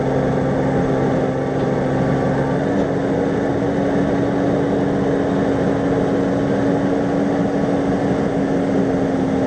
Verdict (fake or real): real